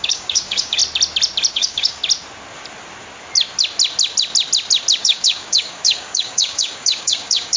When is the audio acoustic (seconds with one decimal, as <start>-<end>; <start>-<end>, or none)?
0.8-1.5; 2.0-5.0